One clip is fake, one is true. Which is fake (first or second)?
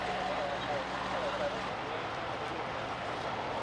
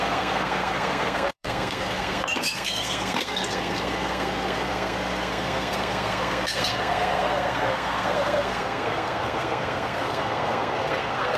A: second